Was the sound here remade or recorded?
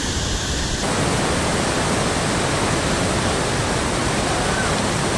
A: recorded